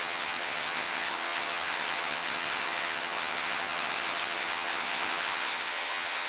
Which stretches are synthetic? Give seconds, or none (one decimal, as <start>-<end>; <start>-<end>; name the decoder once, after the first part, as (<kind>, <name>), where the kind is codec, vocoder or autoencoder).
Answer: 0.0-6.3 (vocoder, HiFi-GAN)